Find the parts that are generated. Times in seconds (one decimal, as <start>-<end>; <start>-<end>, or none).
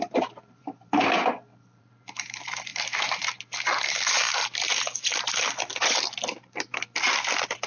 0.0-2.7; 5.3-7.7